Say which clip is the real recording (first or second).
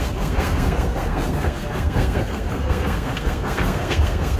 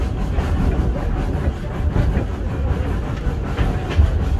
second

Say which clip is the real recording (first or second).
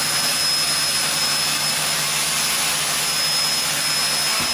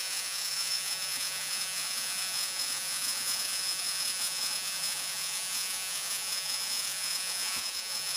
first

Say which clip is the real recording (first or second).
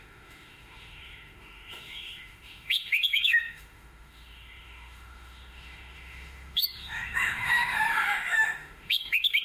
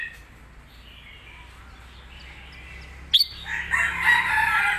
second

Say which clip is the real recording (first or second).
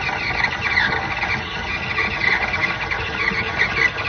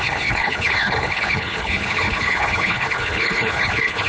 first